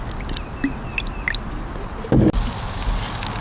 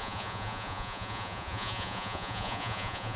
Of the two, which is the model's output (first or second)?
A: second